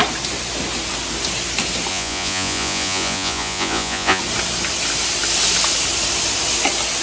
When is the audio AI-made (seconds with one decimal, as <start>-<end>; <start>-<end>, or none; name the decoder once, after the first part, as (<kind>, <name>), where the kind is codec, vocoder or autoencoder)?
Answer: 1.9-4.2 (vocoder, Vocos)